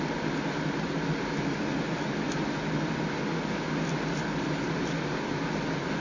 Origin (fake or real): real